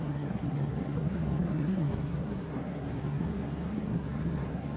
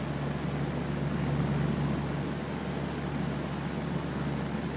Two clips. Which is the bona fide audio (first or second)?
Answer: second